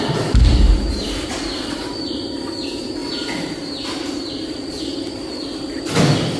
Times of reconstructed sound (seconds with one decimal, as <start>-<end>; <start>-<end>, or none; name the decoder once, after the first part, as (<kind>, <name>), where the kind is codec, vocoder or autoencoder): 0.0-3.0 (vocoder, BigVGAN v2)